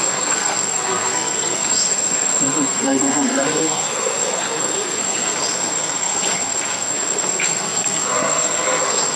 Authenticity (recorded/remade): remade